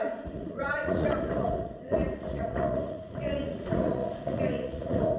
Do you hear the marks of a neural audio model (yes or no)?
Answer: yes